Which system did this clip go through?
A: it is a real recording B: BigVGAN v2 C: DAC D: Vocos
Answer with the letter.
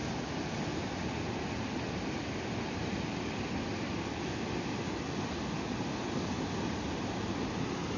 A